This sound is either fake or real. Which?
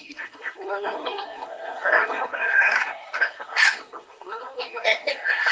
fake